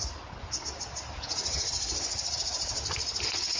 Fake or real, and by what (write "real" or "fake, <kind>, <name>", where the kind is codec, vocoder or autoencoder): real